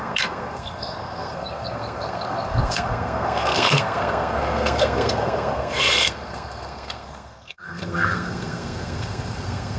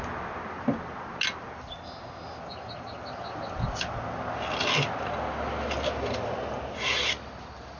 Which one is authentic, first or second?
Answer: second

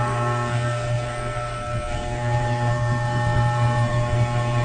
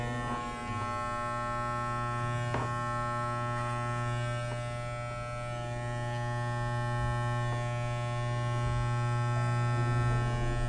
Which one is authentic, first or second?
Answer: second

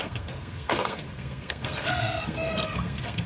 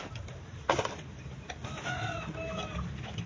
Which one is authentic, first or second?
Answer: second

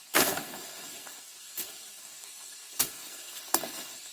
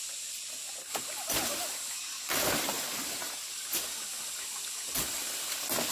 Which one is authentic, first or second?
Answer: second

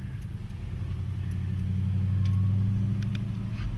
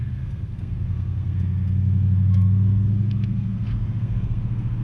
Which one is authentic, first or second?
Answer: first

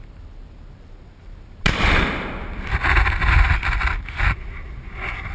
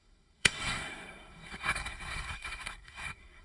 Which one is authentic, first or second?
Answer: first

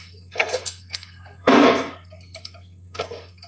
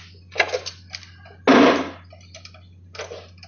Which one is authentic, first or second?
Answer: second